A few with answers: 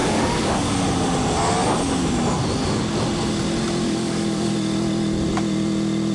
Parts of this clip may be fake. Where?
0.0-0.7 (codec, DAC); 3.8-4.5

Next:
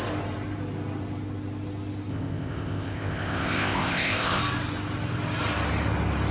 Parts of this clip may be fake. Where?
2.1-4.4 (codec, ZipCodec)

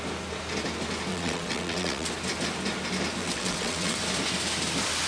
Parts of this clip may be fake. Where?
1.1-2.1 (vocoder, WaveNeXt); 3.2-4.0

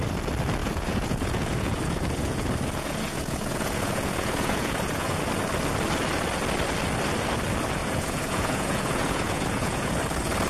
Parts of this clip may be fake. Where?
0.6-5.2 (vocoder, Vocos); 7.8-9.9

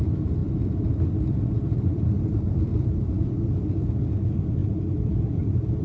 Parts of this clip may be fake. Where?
0.4-3.9 (vocoder, BigVGAN v2); 4.6-5.8

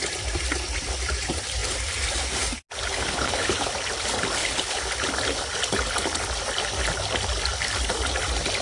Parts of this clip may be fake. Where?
2.9-3.7 (codec, HILCodec); 4.4-4.9

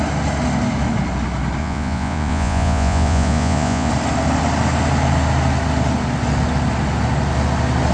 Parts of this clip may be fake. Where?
1.6-3.9 (vocoder, Vocos)